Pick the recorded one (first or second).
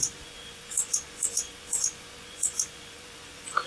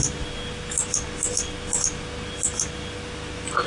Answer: second